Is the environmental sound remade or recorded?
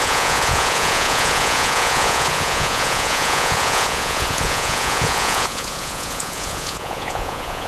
remade